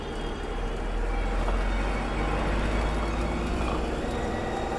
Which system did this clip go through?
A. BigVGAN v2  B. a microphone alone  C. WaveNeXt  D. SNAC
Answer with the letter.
B